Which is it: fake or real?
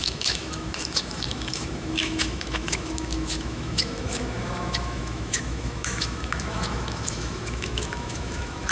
fake